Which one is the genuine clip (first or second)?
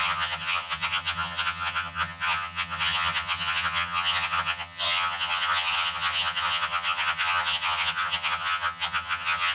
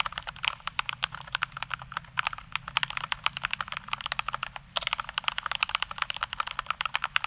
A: second